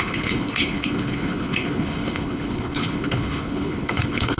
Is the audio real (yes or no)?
no